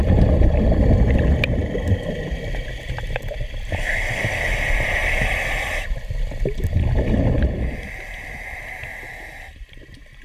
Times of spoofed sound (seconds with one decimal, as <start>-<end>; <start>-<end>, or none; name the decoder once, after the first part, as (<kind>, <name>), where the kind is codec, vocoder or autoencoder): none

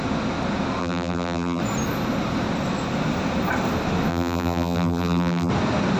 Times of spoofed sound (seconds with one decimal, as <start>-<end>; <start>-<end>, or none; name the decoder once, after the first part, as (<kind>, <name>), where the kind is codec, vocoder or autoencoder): 0.8-1.6 (vocoder, BigVGAN v2); 4.1-5.5

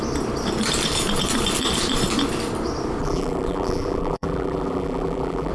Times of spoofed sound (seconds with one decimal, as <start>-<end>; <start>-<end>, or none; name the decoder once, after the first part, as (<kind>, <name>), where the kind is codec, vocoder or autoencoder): 3.0-5.5 (vocoder, BigVGAN v2)